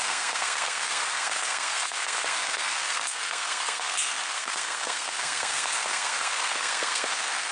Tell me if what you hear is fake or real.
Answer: fake